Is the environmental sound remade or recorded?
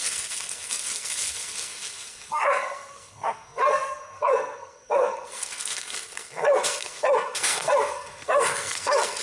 remade